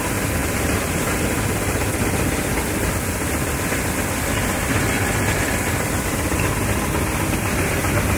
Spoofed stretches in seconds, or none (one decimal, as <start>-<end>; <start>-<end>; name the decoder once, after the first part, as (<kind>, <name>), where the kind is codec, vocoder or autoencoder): 0.4-1.2 (vocoder, BigVGAN v2)

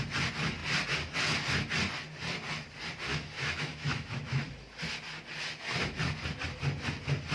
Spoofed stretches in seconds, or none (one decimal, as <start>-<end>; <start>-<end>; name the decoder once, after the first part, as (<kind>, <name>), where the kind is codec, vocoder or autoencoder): 3.1-4.4 (autoencoder, DAC-VAE)

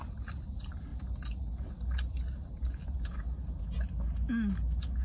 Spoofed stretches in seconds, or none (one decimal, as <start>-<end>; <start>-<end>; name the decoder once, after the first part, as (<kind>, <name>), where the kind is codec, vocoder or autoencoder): none

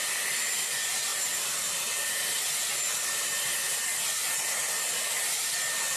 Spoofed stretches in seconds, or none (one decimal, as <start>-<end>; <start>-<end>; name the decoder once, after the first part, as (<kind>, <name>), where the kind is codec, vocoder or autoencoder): none

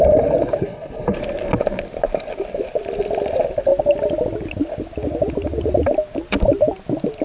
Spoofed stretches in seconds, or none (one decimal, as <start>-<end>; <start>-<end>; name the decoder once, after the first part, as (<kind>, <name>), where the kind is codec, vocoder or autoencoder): 0.6-1.2 (codec, HILCodec)